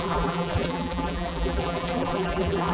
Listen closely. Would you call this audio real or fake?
fake